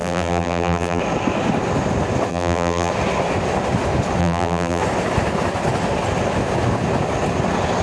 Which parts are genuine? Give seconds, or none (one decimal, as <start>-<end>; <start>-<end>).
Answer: 1.0-2.3; 2.9-4.2; 4.8-7.8